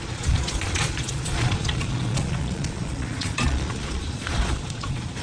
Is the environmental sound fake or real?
fake